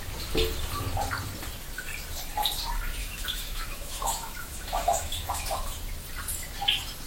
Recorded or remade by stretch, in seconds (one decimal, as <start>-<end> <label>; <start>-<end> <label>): 0.0-3.0 recorded; 3.0-5.8 remade; 5.8-7.1 recorded